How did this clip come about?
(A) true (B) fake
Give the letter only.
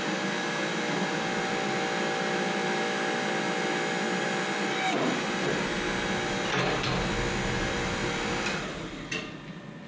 A